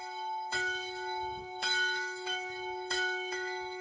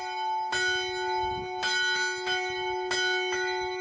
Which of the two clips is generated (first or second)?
first